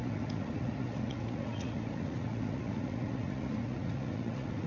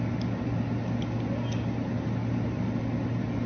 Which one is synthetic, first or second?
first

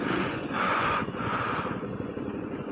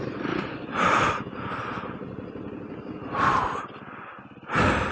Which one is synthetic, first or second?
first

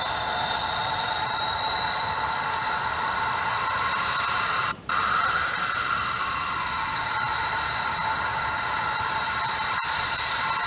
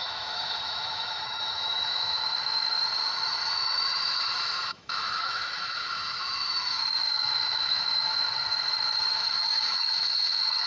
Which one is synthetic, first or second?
second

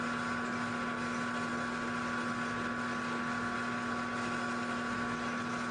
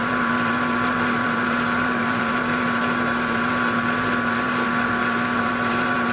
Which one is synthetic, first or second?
second